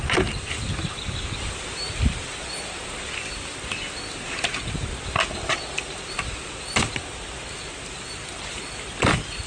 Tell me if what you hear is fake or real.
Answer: fake